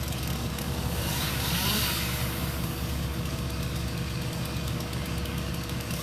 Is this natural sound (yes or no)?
no